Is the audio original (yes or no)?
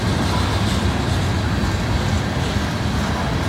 yes